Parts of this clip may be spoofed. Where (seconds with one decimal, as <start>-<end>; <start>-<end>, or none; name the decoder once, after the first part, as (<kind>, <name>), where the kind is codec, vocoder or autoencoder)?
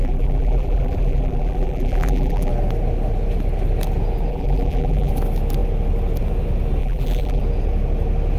0.0-2.5 (vocoder, BigVGAN v2); 4.3-5.1; 6.8-7.4